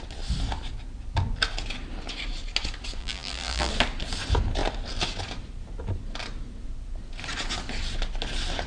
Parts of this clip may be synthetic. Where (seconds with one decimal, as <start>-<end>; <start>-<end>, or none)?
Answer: 3.0-3.7